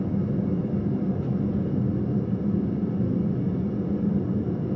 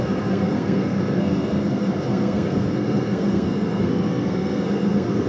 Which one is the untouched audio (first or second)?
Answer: first